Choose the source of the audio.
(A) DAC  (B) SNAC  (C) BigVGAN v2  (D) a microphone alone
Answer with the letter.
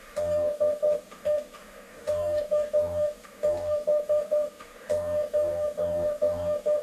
A